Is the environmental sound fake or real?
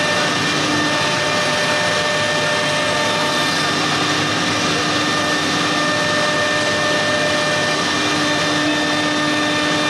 real